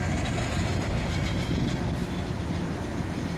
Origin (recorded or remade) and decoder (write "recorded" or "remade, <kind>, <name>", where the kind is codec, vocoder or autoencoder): recorded